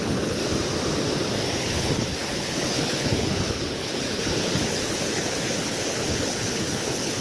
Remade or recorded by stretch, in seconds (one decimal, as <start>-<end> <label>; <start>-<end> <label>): 0.0-0.4 remade; 0.4-1.6 recorded; 1.6-7.2 remade